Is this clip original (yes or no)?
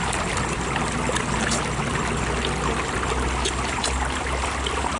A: yes